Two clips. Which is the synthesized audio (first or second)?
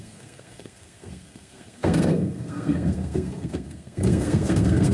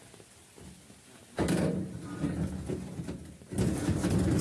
first